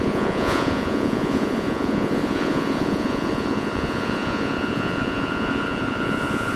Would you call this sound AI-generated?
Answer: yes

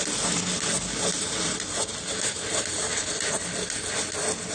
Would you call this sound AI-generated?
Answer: no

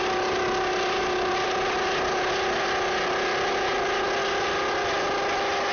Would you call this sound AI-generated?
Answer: no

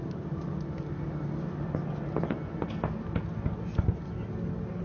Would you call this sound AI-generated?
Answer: no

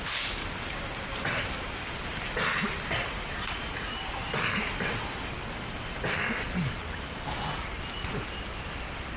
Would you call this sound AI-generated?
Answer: no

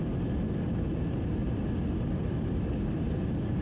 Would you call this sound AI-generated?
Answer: no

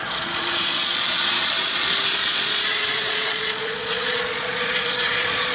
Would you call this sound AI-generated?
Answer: yes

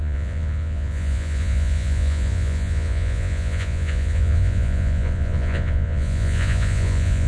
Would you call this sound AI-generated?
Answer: yes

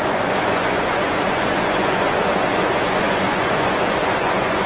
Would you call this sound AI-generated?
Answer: yes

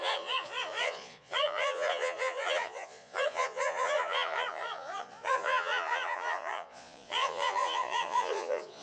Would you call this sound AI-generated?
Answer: yes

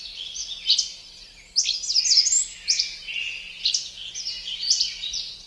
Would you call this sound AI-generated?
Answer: no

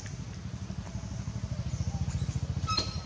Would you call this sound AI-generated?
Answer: no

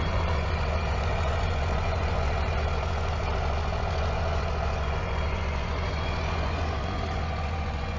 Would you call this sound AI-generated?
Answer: yes